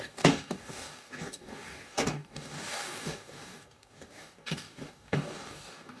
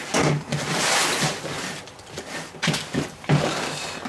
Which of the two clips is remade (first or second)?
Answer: first